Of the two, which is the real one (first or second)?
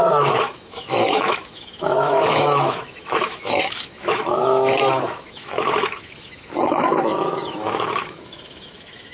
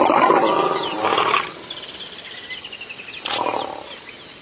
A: second